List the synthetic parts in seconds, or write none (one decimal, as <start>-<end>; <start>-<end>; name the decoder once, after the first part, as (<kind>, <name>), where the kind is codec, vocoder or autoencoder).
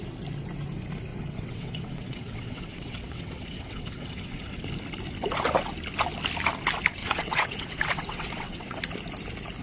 1.1-4.6 (vocoder, WaveNeXt); 7.0-8.8